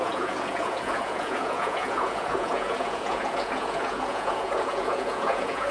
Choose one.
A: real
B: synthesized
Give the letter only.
B